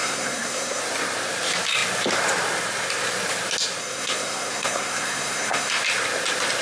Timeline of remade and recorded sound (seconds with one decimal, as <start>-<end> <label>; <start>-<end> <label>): 0.0-0.8 remade; 0.8-3.8 recorded; 3.8-5.8 remade; 5.8-6.6 recorded